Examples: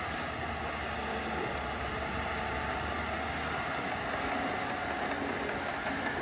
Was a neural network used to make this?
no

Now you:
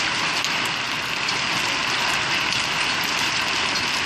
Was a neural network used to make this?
no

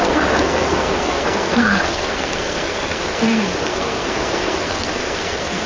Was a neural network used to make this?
yes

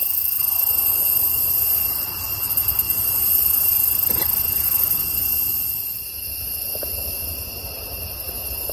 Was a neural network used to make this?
no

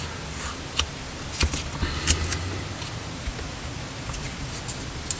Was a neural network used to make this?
no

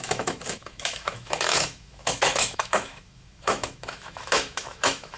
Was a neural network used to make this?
yes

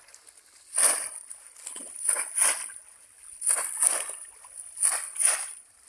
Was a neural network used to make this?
no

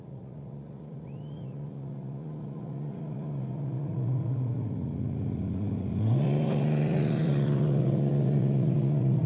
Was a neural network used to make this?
yes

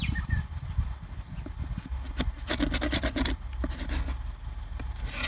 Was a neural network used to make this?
no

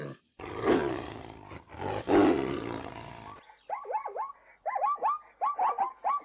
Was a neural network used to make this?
no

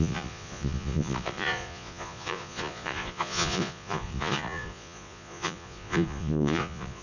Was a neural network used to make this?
yes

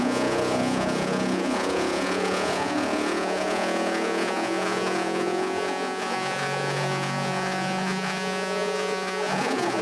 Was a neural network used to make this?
yes